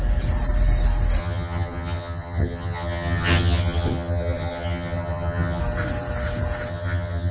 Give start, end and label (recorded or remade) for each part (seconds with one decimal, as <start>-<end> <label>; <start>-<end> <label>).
0.0-1.2 recorded; 1.2-5.6 remade; 5.6-6.7 recorded; 6.7-7.3 remade